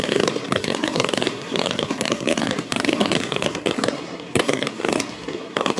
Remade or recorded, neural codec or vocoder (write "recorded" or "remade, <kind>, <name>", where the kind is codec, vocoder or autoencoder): remade, codec, SNAC